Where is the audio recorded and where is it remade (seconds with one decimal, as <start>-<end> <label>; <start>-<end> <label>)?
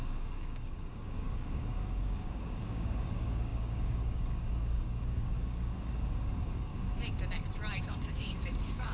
0.0-6.7 remade; 6.7-7.8 recorded; 7.8-8.9 remade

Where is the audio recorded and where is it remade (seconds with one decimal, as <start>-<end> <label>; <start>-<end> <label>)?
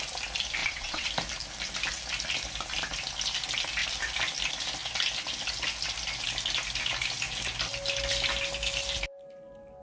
0.0-0.6 recorded; 0.6-1.1 remade; 1.1-9.8 recorded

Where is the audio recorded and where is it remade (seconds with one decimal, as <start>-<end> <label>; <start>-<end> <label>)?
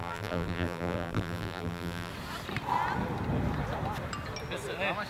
0.0-2.1 remade; 2.1-5.1 recorded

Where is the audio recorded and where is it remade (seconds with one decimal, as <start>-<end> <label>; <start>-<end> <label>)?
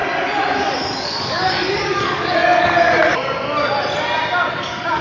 0.0-1.0 recorded; 1.0-2.4 remade; 2.4-4.5 recorded; 4.5-5.0 remade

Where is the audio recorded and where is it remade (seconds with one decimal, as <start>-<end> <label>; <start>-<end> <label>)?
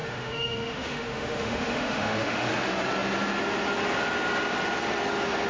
0.0-2.5 remade; 2.5-5.5 recorded